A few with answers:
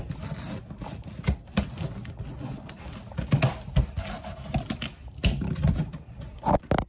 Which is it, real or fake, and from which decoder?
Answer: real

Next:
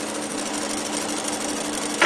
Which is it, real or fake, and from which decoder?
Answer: real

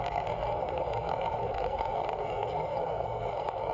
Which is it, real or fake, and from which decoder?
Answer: fake, codec, SNAC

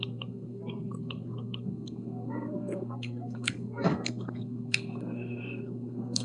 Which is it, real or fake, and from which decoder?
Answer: fake, codec, SNAC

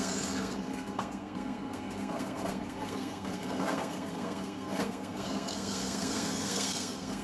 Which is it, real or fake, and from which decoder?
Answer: fake, codec, SNAC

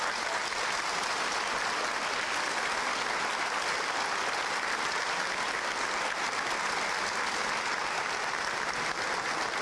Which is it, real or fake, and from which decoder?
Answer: real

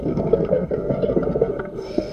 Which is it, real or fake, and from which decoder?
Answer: fake, codec, SNAC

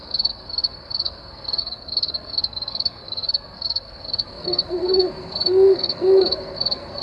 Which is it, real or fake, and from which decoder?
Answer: fake, codec, SNAC